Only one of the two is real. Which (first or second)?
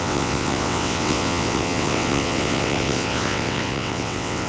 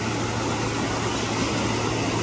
second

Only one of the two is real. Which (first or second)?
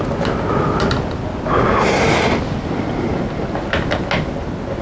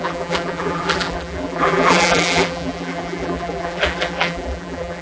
first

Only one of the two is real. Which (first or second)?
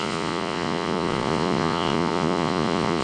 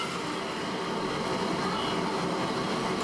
second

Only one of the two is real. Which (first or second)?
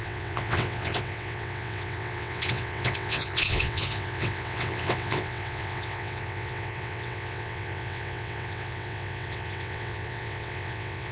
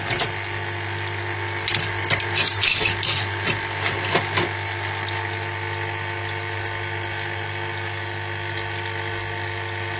second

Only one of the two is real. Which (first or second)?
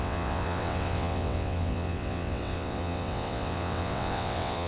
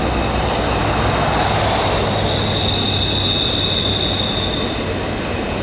second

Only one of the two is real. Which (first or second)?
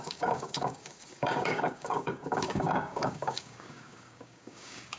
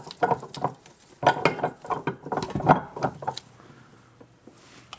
second